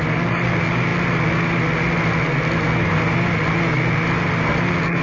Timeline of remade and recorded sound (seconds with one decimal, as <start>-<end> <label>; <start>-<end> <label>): 0.0-5.0 recorded